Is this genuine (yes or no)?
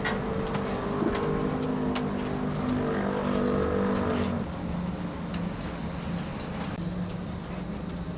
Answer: yes